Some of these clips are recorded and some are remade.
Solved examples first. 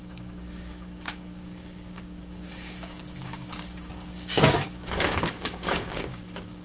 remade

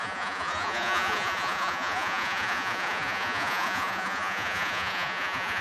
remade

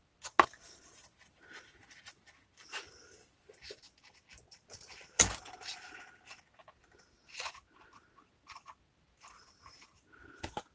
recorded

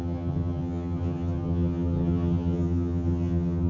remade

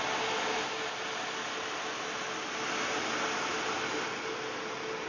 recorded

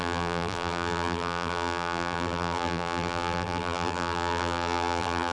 remade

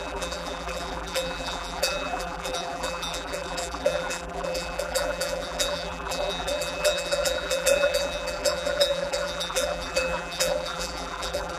remade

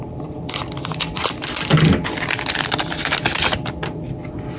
recorded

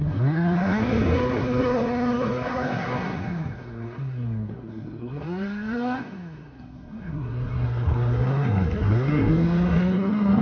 remade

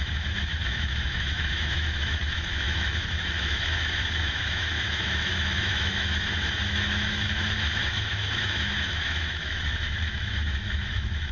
remade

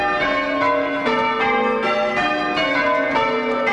recorded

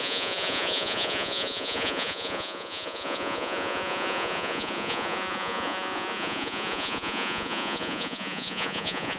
remade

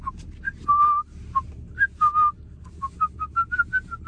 recorded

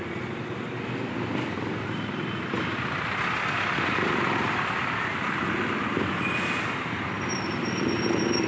recorded